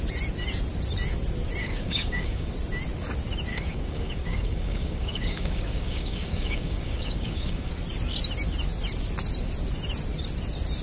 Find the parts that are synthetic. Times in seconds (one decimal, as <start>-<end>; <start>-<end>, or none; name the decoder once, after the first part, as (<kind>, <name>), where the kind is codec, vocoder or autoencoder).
1.6-2.5 (codec, DAC); 3.5-7.7